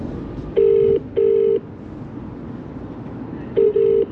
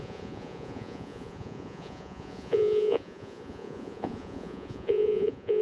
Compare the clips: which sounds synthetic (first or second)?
second